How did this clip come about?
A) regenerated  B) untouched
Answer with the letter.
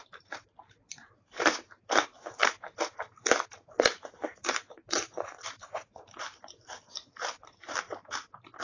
A